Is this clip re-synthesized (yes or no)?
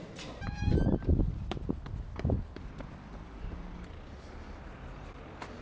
yes